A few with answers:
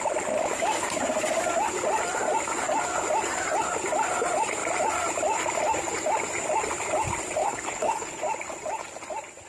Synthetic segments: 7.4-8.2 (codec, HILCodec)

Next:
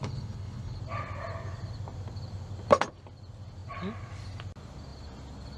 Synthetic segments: 0.0-0.8 (codec, HILCodec)